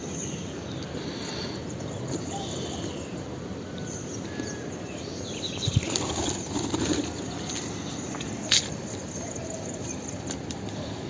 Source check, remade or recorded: remade